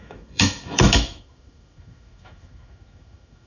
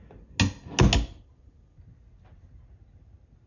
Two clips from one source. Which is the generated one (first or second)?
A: first